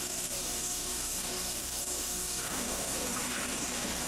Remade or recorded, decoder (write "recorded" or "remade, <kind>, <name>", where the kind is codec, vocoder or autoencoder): remade, codec, DAC